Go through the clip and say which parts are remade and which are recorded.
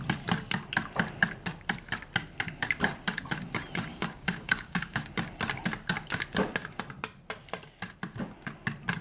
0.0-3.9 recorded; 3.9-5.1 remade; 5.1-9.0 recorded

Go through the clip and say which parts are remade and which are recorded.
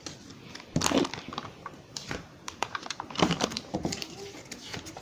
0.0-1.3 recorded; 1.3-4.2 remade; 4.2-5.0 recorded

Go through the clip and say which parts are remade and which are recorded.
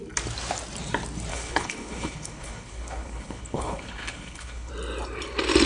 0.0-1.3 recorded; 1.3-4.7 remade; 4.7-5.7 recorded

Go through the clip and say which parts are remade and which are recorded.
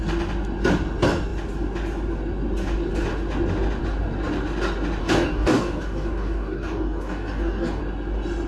0.0-5.0 recorded; 5.0-7.8 remade; 7.8-8.5 recorded